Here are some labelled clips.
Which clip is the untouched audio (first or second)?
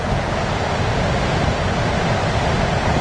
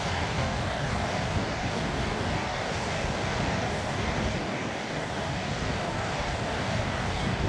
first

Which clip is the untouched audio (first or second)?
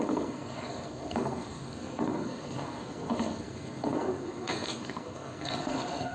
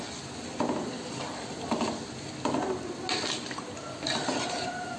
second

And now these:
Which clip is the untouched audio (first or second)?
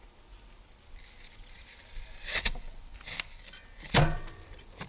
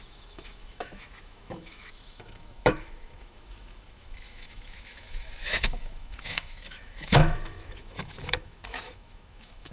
first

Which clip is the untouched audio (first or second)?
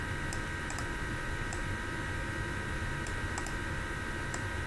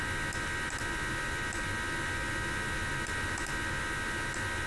second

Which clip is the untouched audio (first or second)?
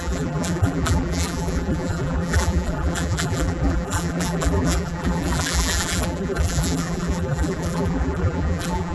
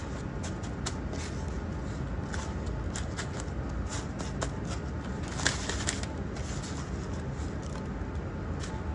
second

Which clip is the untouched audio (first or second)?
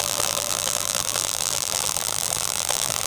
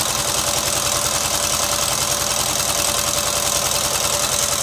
second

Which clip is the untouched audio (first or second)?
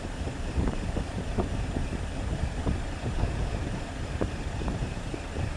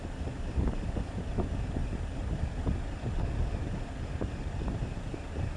second